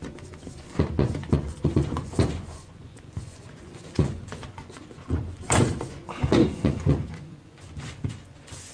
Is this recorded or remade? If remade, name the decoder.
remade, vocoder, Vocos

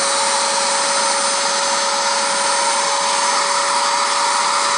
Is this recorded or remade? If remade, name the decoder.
recorded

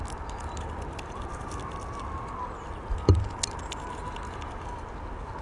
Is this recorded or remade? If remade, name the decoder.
recorded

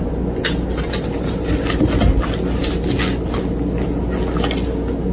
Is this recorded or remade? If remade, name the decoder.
recorded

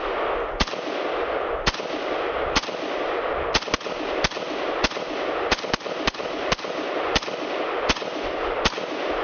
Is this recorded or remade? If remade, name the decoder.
recorded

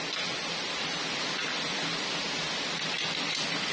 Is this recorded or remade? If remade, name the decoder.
recorded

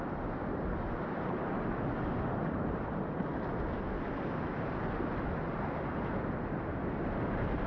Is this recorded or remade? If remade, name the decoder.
recorded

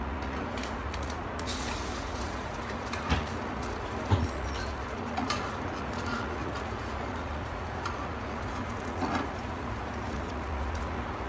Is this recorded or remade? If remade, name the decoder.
remade, vocoder, Vocos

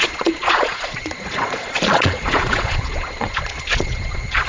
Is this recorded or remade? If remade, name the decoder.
remade, vocoder, Vocos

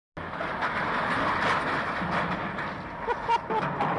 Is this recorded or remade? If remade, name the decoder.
recorded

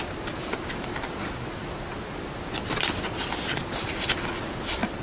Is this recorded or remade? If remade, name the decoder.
recorded